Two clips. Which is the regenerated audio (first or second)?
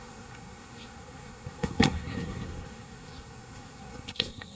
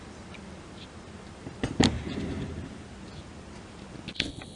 first